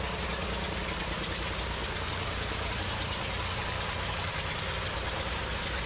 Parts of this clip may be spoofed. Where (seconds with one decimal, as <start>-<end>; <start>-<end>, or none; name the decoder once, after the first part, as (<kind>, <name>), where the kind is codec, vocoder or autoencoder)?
1.8-3.3 (vocoder, BigVGAN v2)